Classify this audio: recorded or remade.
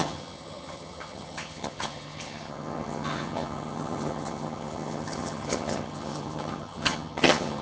remade